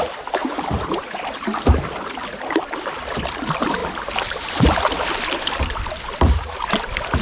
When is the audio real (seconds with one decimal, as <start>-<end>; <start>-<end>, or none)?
0.4-1.8